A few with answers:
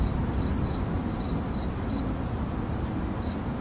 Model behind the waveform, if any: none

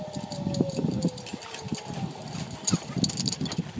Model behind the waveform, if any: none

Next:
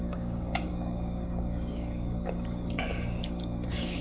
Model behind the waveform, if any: codec, DAC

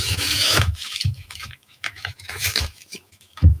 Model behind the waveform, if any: autoencoder, DAC-VAE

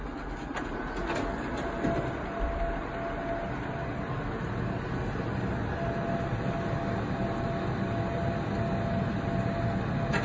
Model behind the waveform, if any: none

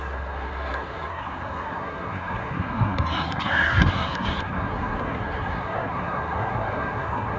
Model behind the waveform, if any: codec, SNAC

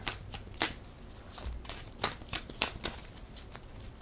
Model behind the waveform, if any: none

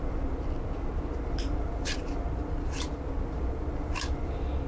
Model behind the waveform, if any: none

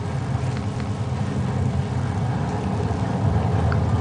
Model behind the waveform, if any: none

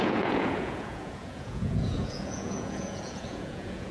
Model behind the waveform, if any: vocoder, Vocos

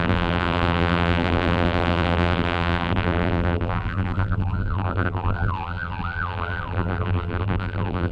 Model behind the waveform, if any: vocoder, BigVGAN v2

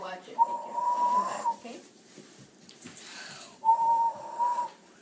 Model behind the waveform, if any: vocoder, BigVGAN v2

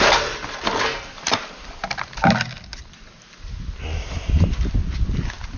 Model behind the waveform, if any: none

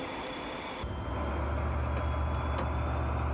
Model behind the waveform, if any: none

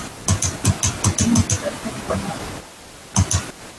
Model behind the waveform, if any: none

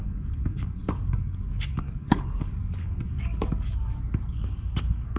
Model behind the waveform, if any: codec, DAC